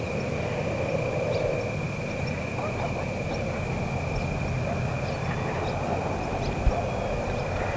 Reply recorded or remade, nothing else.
recorded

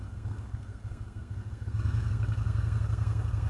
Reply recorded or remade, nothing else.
remade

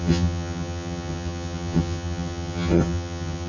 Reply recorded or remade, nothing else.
remade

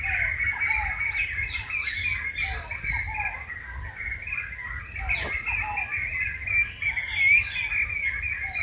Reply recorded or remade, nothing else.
recorded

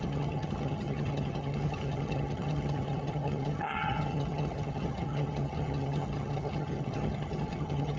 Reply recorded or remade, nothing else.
remade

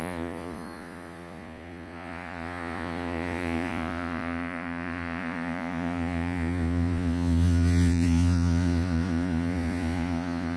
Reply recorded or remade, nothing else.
remade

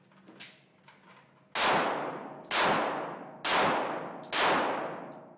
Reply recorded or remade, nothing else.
recorded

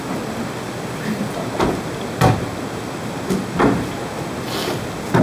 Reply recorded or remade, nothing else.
recorded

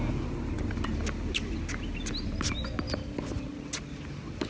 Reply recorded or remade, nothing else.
recorded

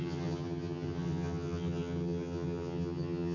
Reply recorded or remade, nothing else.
remade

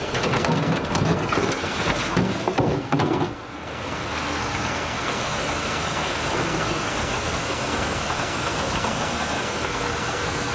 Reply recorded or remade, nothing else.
remade